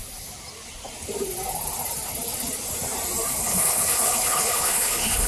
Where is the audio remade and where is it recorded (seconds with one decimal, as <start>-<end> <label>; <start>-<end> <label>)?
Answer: 0.0-3.4 recorded; 3.4-5.3 remade